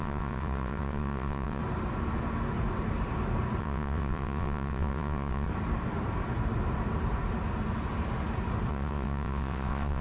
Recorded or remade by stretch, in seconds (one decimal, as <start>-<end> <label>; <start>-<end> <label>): 0.0-1.6 remade; 1.6-3.6 recorded; 3.6-5.5 remade; 5.5-8.7 recorded; 8.7-10.0 remade